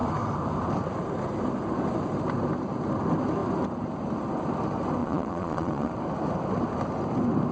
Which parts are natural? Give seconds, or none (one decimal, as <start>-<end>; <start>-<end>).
0.0-5.0; 5.9-7.5

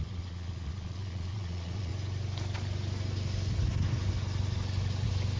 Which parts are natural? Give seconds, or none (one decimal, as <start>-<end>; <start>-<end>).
1.9-5.4

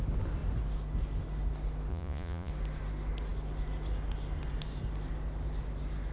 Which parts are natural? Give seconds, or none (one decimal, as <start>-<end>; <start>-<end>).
0.0-1.9; 2.5-6.1

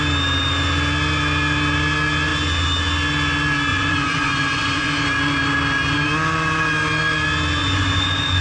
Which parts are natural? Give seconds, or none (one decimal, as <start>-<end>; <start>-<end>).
0.0-3.7; 4.9-7.6

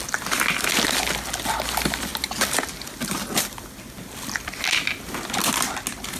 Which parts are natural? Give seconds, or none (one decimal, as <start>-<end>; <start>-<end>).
0.0-6.2

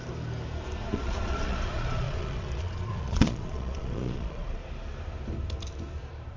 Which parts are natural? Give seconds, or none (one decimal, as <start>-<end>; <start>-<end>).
0.0-0.9; 4.7-6.4

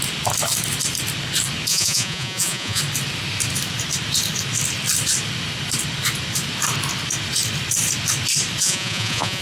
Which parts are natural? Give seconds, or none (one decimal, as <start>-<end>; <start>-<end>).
0.0-1.7; 2.8-8.6